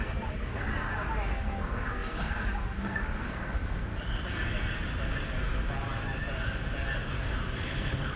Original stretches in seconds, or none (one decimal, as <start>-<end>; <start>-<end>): 0.7-1.3; 3.9-7.6